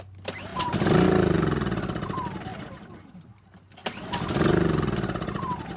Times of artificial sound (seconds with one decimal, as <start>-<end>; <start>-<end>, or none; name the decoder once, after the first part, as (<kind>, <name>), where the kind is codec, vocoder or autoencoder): none

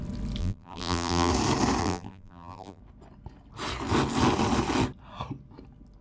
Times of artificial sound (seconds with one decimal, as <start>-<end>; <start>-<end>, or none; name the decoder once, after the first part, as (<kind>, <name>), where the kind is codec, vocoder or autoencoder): 0.4-1.3 (vocoder, BigVGAN v2); 1.8-2.8

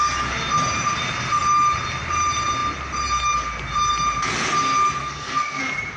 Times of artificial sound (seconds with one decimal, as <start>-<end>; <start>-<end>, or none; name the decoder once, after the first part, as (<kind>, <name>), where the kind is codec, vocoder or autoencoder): 5.0-5.6 (codec, SNAC)

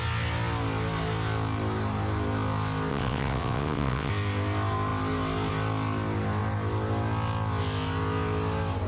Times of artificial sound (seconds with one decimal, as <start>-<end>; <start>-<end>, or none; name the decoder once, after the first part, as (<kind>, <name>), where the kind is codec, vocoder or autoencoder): 2.9-4.1 (vocoder, WaveNeXt)

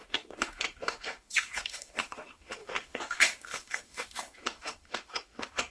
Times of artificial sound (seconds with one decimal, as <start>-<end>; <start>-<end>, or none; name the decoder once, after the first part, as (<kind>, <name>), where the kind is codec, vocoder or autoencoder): 0.0-5.7 (autoencoder, DAC-VAE)

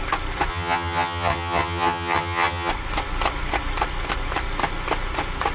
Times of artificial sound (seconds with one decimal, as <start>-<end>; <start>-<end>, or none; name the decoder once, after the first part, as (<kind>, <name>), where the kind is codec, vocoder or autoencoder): 0.5-2.7 (vocoder, HiFi-GAN)

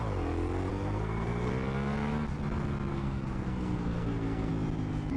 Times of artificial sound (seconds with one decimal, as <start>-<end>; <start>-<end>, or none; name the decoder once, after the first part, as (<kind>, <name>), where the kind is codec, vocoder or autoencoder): 0.7-1.5 (codec, SNAC); 2.9-4.5

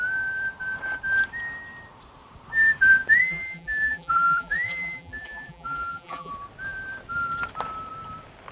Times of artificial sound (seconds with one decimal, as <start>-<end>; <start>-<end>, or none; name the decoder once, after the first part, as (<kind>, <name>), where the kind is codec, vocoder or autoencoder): 3.2-6.3 (vocoder, BigVGAN v2)